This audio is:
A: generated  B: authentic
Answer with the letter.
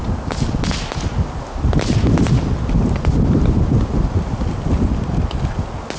B